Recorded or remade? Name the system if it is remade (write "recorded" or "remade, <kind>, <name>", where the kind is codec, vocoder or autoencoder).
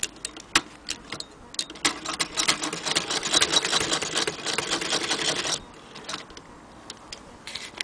recorded